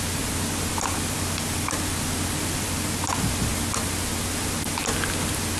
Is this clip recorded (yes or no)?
yes